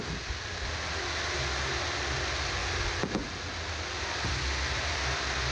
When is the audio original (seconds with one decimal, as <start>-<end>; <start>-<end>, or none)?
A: 0.0-5.5